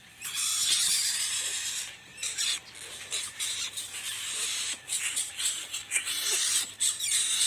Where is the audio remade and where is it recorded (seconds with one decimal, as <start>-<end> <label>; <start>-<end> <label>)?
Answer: 0.0-2.6 remade; 2.6-3.2 recorded; 3.2-5.8 remade; 5.8-6.5 recorded; 6.5-7.5 remade